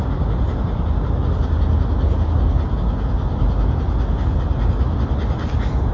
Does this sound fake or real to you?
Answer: real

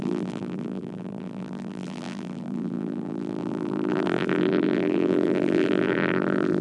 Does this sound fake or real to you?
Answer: fake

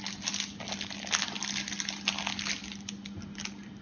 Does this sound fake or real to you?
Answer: real